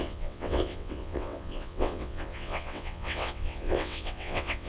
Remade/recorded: remade